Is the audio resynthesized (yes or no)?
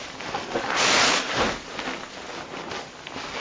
no